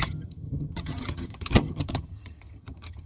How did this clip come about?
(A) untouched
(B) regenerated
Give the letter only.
B